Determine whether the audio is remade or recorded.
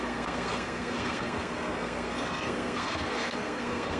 remade